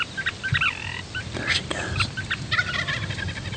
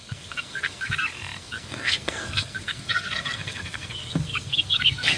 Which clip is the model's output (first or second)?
second